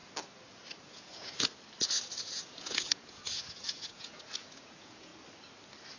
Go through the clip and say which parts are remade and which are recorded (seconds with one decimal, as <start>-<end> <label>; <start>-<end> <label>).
0.0-0.8 recorded; 0.8-1.5 remade; 1.5-2.2 recorded; 2.2-5.1 remade; 5.1-6.0 recorded